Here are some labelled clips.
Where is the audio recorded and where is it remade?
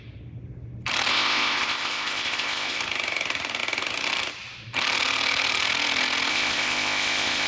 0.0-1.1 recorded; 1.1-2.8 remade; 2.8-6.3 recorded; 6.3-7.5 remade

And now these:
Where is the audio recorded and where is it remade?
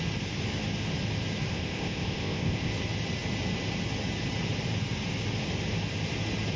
0.0-1.5 recorded; 1.5-2.7 remade; 2.7-6.6 recorded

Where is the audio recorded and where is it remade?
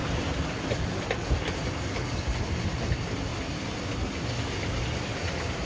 0.0-5.7 recorded